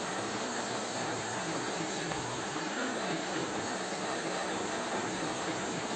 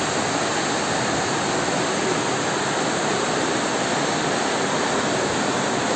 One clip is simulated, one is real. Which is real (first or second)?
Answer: second